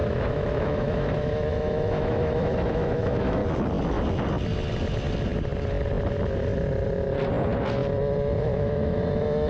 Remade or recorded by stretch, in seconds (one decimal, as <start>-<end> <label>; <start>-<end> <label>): 0.0-3.4 remade; 3.4-8.4 recorded; 8.4-9.5 remade